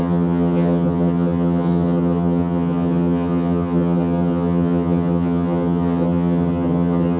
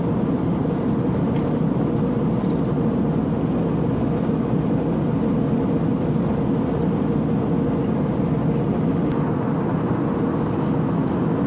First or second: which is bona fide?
second